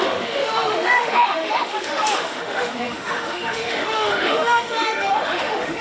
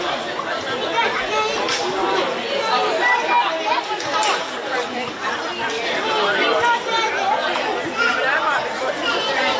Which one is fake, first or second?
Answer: first